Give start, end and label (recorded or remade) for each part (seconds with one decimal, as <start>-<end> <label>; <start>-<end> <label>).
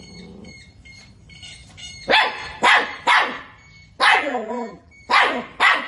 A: 0.0-4.1 recorded; 4.1-4.9 remade; 4.9-5.9 recorded